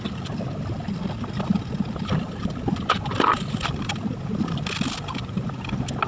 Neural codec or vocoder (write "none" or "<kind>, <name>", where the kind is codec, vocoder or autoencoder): none